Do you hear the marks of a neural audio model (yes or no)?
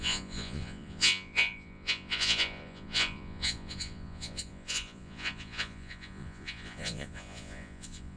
yes